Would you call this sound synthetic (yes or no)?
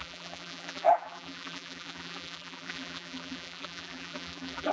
yes